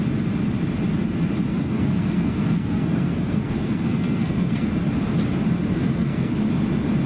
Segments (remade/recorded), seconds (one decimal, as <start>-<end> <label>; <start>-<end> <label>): 0.0-1.5 recorded; 1.5-4.7 remade; 4.7-5.6 recorded; 5.6-6.3 remade; 6.3-7.1 recorded